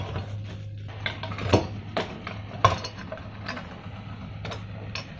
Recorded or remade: recorded